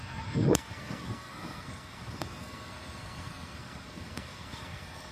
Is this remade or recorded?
remade